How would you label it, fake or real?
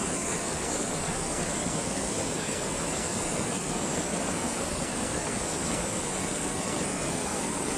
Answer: fake